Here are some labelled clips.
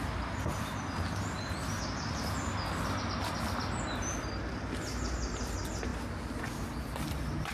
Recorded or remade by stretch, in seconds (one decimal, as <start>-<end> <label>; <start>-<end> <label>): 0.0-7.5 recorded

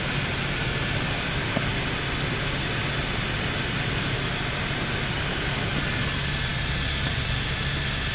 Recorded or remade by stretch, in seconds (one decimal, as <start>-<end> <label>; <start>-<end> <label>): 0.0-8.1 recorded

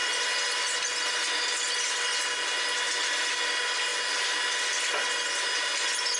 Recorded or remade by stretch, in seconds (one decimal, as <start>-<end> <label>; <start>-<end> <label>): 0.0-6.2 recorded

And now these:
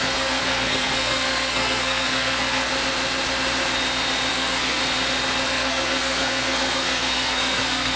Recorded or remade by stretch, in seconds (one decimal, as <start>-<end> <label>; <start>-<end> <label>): 0.0-2.7 remade; 2.7-4.3 recorded; 4.3-4.8 remade; 4.8-5.5 recorded; 5.5-8.0 remade

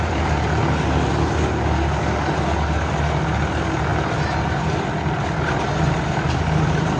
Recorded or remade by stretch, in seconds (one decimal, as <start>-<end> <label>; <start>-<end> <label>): 0.0-7.0 recorded

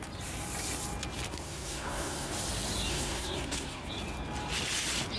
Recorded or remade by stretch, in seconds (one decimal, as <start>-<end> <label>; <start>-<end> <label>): 0.0-1.3 recorded; 1.3-2.3 remade; 2.3-2.9 recorded; 2.9-3.9 remade; 3.9-5.2 recorded